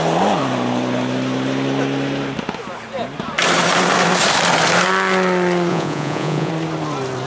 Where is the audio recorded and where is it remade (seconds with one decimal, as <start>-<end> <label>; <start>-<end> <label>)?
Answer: 0.0-5.7 recorded; 5.7-6.5 remade; 6.5-7.3 recorded